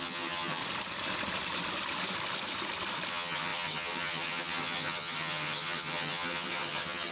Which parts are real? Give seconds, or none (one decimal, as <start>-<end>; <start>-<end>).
0.6-3.1